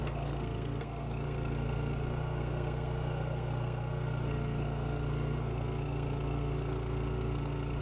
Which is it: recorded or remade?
remade